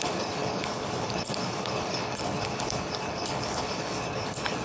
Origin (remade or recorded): remade